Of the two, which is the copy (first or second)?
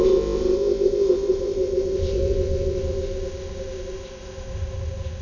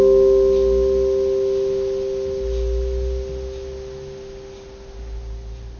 first